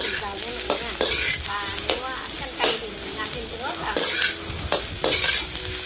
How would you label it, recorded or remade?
recorded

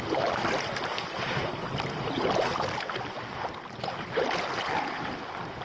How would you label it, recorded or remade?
recorded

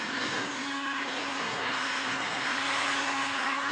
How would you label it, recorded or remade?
remade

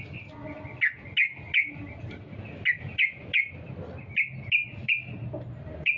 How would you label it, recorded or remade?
recorded